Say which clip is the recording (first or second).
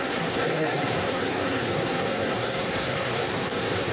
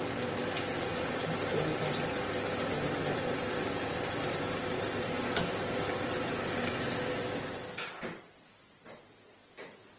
second